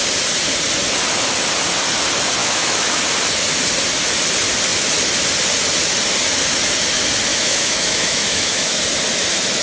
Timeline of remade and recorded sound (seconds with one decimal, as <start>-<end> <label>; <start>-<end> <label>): 0.0-2.4 recorded; 2.4-3.0 remade; 3.0-7.3 recorded; 7.3-8.8 remade; 8.8-9.6 recorded